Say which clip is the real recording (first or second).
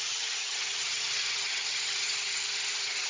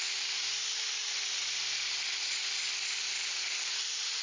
second